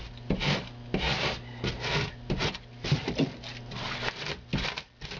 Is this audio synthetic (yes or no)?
no